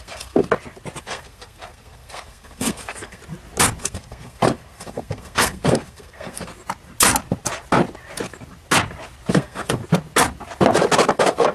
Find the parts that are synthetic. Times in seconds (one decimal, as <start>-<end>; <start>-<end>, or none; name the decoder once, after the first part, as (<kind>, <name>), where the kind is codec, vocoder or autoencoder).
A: 0.0-0.4 (codec, SNAC); 1.0-3.2; 3.8-6.5; 9.3-9.8; 11.1-11.5